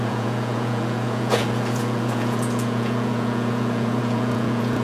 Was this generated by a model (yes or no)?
yes